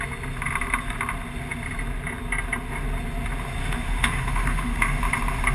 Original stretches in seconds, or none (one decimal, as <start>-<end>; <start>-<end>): 0.0-3.6; 5.0-5.5